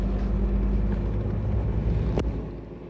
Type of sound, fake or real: real